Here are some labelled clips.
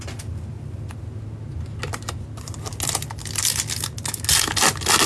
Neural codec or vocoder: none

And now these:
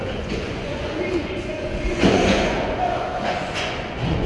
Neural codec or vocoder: vocoder, Vocos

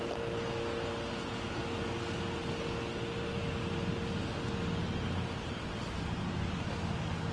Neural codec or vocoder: none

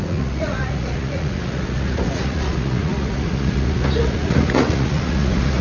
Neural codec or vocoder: vocoder, Vocos